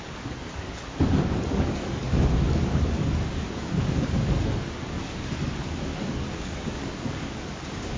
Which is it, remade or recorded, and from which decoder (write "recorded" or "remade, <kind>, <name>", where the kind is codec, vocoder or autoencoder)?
remade, codec, DAC